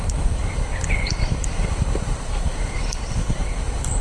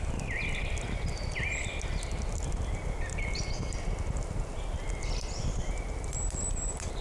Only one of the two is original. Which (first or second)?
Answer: second